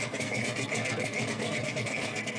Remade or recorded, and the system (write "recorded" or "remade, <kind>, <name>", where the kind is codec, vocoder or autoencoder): remade, codec, SNAC